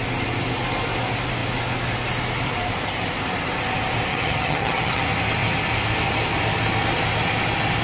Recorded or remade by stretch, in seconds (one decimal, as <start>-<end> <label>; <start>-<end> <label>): 0.0-4.1 recorded; 4.1-5.0 remade; 5.0-7.8 recorded